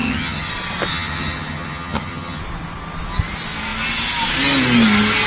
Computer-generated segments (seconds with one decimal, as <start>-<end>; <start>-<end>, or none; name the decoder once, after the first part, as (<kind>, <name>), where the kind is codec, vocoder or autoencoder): 0.0-0.5 (vocoder, HiFi-GAN); 0.9-2.4